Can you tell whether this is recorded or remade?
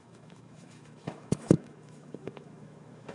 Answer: remade